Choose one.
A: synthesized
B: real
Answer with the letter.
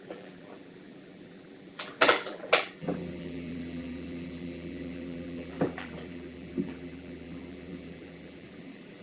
A